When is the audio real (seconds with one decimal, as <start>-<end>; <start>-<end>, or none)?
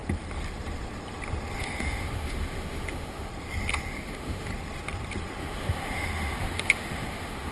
0.0-1.6; 3.3-3.9; 4.5-5.4